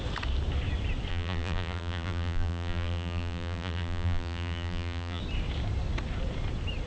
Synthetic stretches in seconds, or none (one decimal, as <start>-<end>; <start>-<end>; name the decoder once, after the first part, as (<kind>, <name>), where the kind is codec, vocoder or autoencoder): 1.1-5.2 (vocoder, BigVGAN v2)